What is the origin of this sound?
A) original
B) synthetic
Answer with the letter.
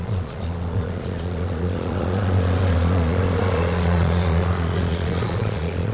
B